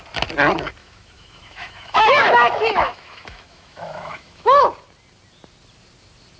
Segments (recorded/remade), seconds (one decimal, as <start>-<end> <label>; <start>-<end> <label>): 0.0-0.8 recorded; 0.8-4.6 remade; 4.6-6.4 recorded